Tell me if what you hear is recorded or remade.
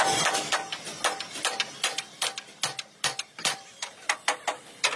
recorded